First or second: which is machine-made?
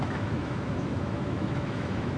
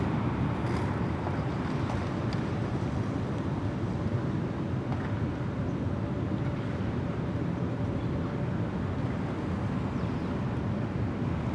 first